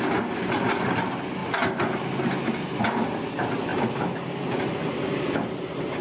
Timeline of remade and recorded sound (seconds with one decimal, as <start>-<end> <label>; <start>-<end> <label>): 0.0-6.0 recorded